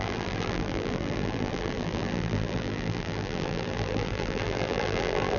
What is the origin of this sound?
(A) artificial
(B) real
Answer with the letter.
A